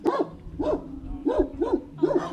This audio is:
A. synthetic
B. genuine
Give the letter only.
B